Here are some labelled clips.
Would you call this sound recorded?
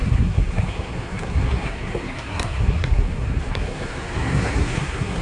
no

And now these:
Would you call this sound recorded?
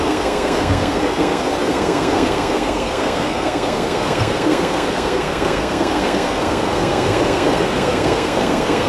no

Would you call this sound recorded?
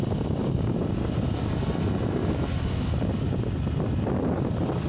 yes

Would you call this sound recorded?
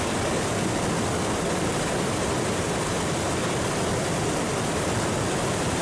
yes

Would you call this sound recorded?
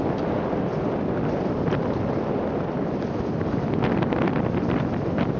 yes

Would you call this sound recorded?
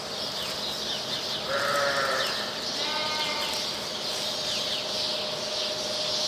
yes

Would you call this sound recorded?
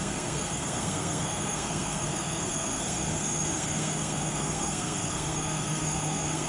no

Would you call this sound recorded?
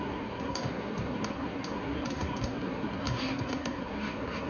no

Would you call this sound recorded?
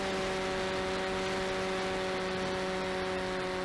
yes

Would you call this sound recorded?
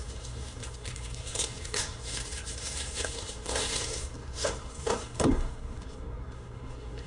no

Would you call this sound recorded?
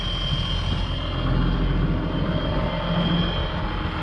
yes